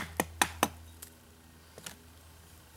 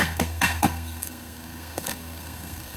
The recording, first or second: first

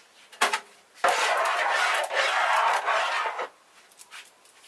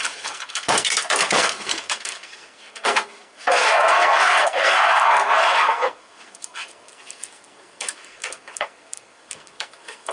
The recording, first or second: first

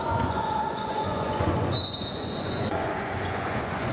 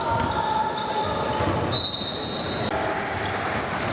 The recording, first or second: second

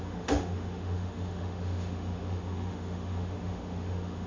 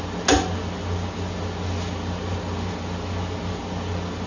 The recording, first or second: second